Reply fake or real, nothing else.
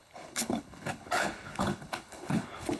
fake